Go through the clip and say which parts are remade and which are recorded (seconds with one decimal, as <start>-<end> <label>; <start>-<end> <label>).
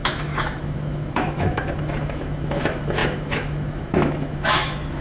0.0-5.0 remade